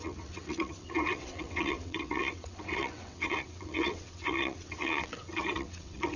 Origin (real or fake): fake